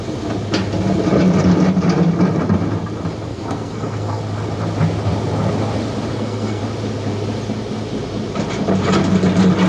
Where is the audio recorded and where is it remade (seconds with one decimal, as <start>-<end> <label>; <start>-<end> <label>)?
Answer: 0.0-3.3 recorded; 3.3-4.2 remade; 4.2-6.1 recorded; 6.1-6.6 remade; 6.6-9.7 recorded